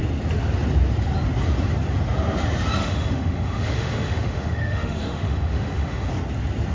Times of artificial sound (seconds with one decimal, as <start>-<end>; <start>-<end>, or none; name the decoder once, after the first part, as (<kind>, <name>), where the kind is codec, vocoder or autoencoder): 2.8-6.1 (autoencoder, DAC-VAE)